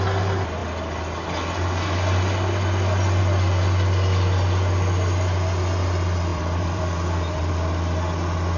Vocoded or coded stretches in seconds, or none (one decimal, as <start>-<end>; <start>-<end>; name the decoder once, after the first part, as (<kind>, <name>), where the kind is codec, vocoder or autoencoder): 6.3-7.5 (vocoder, BigVGAN v2)